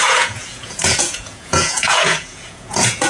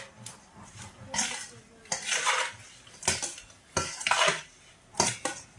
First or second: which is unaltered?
second